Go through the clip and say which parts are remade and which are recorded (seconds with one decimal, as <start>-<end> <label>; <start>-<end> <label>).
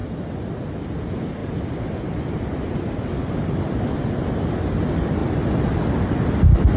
0.0-1.4 recorded; 1.4-4.1 remade; 4.1-5.2 recorded; 5.2-5.9 remade; 5.9-6.8 recorded